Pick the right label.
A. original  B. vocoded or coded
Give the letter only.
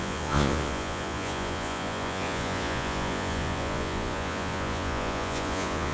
B